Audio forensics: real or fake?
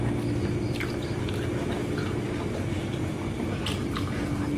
real